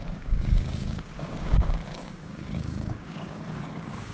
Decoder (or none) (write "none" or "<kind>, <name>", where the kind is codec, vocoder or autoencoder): codec, DAC